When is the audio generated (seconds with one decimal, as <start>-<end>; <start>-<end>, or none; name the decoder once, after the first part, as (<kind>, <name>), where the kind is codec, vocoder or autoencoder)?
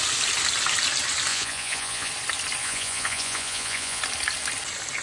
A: 1.3-2.1 (vocoder, Vocos); 2.6-4.0